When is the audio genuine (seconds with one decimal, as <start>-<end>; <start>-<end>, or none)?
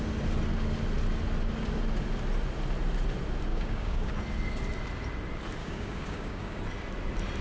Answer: 0.0-3.5; 4.1-5.6; 6.6-7.4